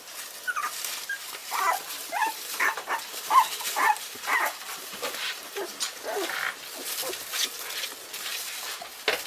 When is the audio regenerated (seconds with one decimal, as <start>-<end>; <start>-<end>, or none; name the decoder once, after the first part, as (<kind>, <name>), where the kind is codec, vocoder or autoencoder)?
1.4-5.6 (vocoder, BigVGAN v2); 8.3-8.9